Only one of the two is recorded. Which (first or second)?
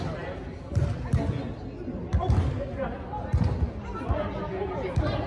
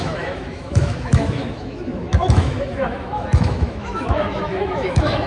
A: first